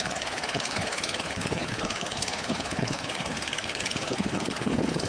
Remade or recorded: remade